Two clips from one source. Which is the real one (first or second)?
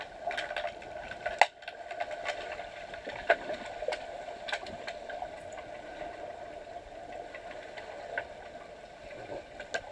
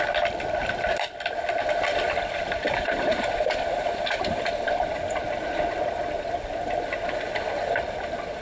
first